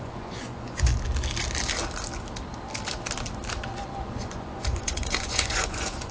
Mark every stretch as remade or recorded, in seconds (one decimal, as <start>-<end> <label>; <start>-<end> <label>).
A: 0.0-0.9 remade; 0.9-3.6 recorded; 3.6-6.1 remade